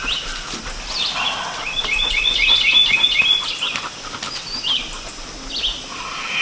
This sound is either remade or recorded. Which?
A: recorded